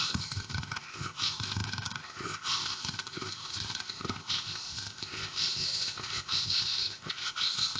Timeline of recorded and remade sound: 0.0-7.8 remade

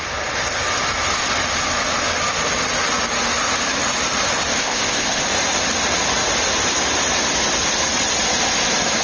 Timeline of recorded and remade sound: 0.0-4.6 recorded; 4.6-5.2 remade; 5.2-9.0 recorded

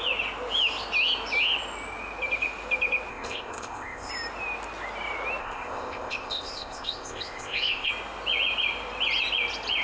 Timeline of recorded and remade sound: 0.0-3.1 recorded; 3.1-4.1 remade; 4.1-5.4 recorded; 5.4-7.9 remade; 7.9-9.8 recorded

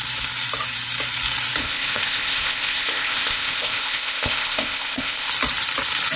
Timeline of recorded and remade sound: 0.0-1.6 recorded; 1.6-5.3 remade; 5.3-6.2 recorded